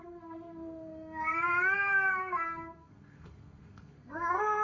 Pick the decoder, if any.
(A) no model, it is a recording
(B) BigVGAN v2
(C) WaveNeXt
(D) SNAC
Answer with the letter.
D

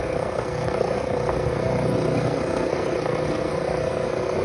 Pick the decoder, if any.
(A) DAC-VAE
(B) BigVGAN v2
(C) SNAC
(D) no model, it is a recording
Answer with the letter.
C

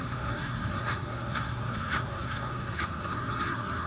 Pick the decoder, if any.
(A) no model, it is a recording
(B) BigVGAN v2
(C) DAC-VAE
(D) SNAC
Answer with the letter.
D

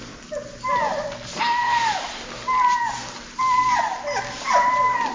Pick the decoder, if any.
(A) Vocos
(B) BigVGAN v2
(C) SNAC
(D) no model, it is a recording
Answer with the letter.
D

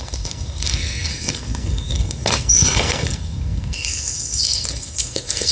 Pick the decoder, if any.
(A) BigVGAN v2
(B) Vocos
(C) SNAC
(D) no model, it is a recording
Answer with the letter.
C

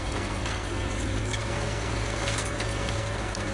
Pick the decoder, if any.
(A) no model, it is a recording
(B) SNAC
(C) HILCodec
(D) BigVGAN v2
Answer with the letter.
B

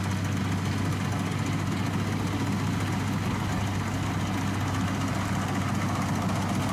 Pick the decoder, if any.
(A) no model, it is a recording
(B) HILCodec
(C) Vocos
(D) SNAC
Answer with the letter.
A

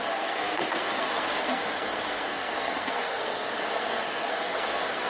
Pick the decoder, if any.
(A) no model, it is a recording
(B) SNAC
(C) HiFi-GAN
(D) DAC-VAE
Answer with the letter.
B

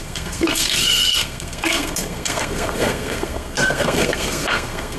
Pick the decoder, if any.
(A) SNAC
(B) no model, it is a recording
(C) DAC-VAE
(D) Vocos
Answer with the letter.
A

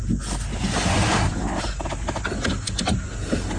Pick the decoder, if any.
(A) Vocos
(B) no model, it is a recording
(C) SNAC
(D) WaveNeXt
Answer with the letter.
B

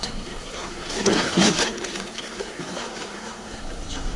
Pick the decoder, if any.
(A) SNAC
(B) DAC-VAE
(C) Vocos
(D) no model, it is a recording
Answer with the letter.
A